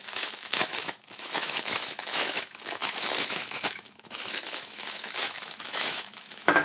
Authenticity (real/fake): fake